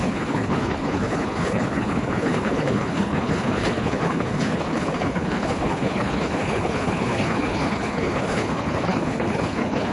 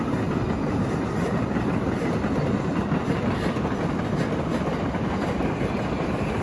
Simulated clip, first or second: first